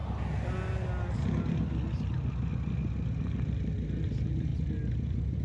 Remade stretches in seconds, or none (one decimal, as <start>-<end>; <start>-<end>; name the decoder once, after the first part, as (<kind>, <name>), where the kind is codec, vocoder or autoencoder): 3.2-5.4 (vocoder, BigVGAN v2)